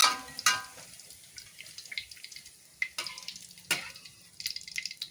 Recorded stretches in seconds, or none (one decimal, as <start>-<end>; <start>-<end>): 0.0-5.1